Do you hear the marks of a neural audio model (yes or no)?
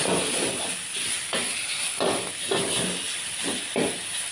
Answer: no